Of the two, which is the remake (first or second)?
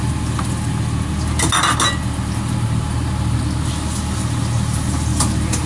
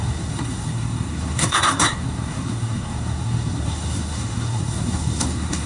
second